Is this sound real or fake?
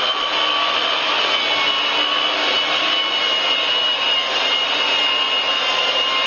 real